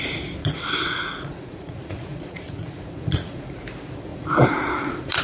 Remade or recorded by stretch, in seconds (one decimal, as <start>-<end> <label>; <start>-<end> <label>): 0.0-0.4 recorded; 0.4-3.5 remade; 3.5-4.1 recorded; 4.1-5.2 remade